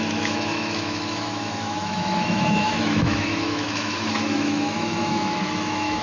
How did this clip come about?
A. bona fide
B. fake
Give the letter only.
B